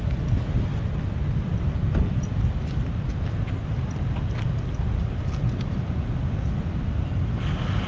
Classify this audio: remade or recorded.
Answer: recorded